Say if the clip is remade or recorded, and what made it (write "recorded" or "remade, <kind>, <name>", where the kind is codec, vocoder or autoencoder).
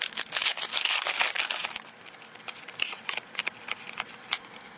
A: recorded